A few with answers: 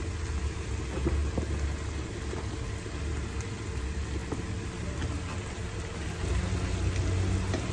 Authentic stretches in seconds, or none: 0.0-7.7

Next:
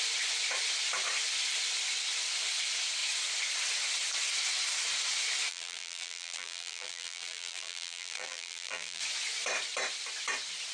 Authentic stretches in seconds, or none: 0.0-5.5; 9.0-10.7

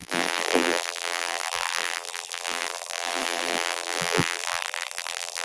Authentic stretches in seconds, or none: none

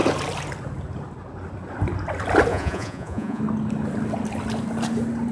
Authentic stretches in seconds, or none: 0.0-2.5; 3.4-5.3

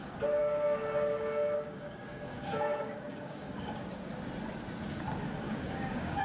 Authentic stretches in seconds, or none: 0.0-0.4; 4.1-5.5

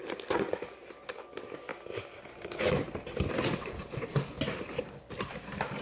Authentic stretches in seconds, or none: 0.0-5.8

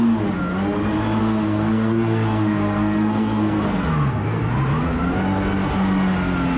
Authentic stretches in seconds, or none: 0.0-1.2; 4.4-6.6

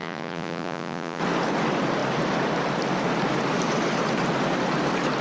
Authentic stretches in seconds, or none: 1.2-5.2